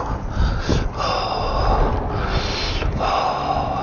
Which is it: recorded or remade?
recorded